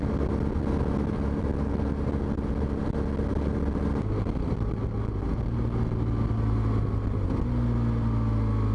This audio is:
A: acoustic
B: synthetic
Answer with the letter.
A